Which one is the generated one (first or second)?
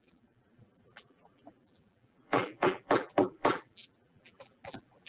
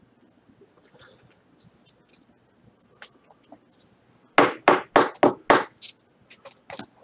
first